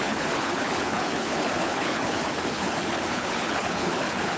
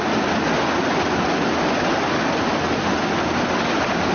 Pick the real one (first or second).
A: second